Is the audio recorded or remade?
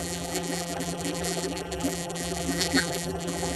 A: remade